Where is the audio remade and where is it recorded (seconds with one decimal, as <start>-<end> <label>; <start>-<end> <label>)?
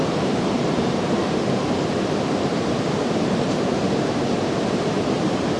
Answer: 0.0-3.8 remade; 3.8-4.6 recorded; 4.6-5.6 remade